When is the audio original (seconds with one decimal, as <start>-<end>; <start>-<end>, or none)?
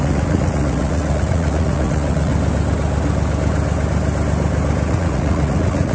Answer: 2.3-4.9